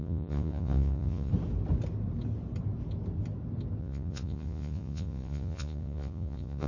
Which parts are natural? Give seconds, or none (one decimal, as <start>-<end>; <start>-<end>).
1.3-3.8